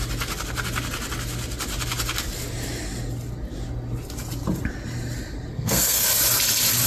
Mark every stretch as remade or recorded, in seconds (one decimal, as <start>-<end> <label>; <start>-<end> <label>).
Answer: 0.0-5.5 recorded; 5.5-6.1 remade; 6.1-6.9 recorded